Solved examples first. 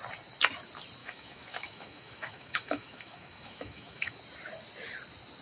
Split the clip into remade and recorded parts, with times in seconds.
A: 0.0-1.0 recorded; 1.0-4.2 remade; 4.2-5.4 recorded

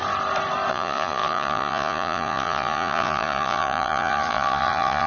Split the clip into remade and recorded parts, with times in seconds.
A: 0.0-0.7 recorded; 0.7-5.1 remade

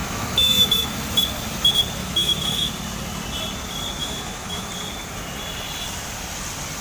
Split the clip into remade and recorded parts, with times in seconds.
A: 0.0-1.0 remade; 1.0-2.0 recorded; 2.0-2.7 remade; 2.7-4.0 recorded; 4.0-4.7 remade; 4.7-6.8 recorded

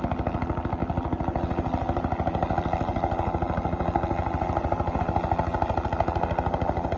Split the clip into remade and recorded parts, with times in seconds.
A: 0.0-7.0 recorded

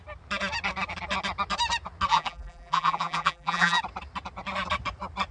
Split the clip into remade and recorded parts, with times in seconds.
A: 0.0-2.1 recorded; 2.1-3.8 remade; 3.8-5.3 recorded

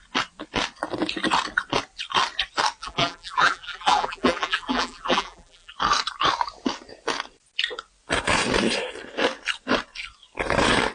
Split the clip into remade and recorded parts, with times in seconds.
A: 0.0-2.8 recorded; 2.8-5.7 remade; 5.7-10.9 recorded

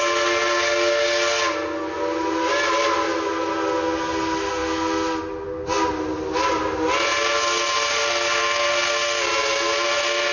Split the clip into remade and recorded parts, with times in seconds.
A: 0.0-10.3 recorded